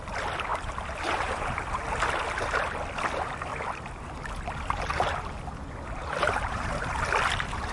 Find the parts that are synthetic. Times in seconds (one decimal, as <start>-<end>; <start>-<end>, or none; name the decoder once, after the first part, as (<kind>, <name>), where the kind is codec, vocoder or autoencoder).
0.5-1.8 (vocoder, BigVGAN v2); 3.5-4.1; 6.0-6.9